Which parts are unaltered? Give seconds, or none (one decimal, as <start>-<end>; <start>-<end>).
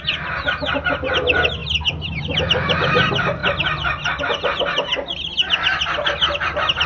0.0-3.4; 4.2-6.9